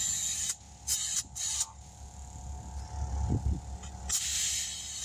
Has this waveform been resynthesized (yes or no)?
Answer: no